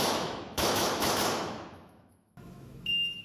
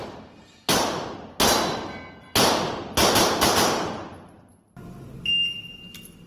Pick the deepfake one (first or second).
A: first